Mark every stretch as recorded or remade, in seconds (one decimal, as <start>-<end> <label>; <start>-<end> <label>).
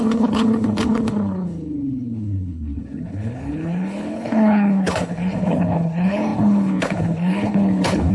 0.0-8.1 remade